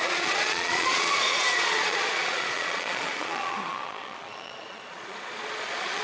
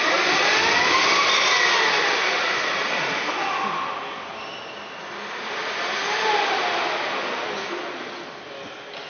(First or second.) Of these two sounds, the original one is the second